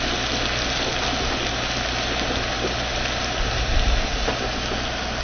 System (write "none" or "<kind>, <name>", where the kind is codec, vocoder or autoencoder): none